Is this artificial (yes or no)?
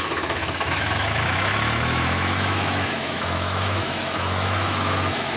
yes